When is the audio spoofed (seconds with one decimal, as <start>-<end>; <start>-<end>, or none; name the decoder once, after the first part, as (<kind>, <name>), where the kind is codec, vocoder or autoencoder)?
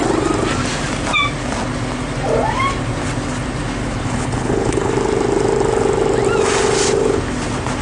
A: 3.8-4.9 (codec, HILCodec)